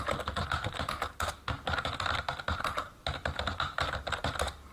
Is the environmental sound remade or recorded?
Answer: recorded